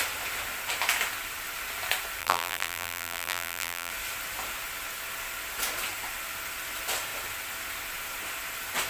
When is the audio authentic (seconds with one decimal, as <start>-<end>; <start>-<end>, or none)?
0.0-2.2; 3.9-8.9